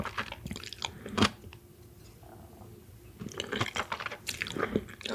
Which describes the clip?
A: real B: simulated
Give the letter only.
A